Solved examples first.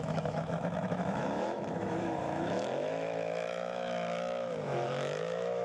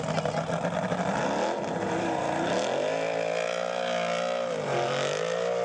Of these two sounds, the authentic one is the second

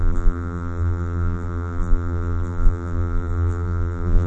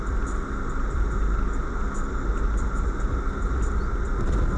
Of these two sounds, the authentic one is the second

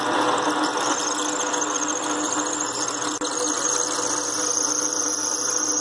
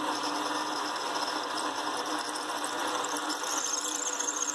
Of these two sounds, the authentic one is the first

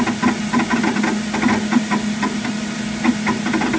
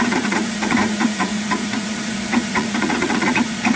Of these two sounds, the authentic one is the first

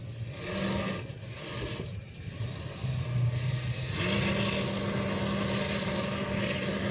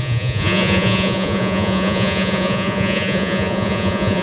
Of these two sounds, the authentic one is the first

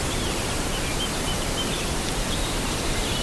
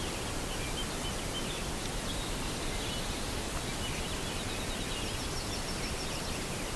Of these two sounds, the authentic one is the second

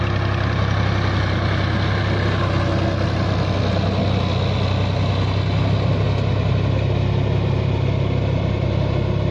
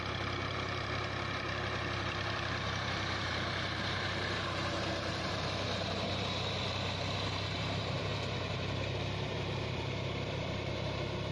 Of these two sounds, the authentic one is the first